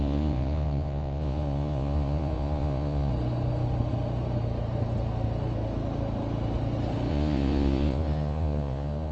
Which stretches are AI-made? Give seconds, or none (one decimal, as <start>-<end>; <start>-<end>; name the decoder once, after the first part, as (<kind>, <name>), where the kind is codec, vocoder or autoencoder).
0.0-3.1 (vocoder, Vocos); 7.1-9.1